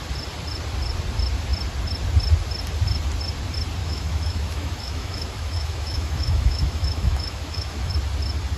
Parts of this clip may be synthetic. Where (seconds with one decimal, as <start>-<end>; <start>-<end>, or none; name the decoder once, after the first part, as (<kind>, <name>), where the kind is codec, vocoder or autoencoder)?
3.8-7.9 (autoencoder, DAC-VAE)